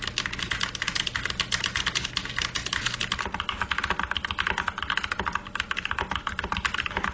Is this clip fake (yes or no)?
no